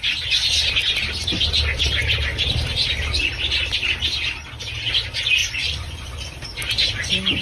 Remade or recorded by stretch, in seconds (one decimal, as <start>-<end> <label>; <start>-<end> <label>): 0.0-5.4 recorded; 5.4-6.2 remade; 6.2-7.4 recorded